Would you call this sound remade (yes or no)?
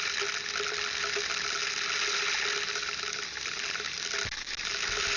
no